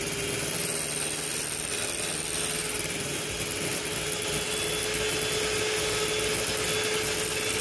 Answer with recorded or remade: recorded